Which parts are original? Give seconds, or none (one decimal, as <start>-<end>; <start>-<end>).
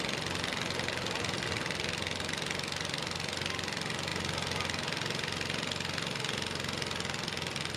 0.0-7.8